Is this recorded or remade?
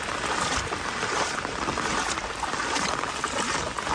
recorded